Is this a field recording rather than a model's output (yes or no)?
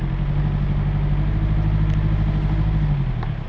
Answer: yes